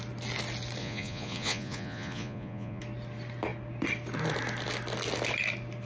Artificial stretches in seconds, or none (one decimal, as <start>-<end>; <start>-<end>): 0.8-2.8